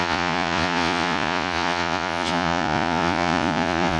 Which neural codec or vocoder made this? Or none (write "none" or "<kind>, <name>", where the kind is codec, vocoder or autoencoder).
vocoder, Vocos